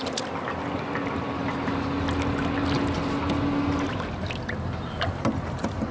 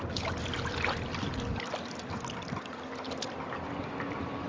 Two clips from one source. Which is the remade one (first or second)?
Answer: second